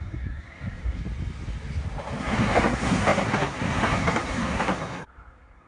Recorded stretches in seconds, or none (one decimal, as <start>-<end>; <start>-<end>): 1.0-2.2